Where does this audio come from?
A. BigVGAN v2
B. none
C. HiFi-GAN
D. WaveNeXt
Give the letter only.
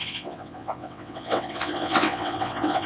D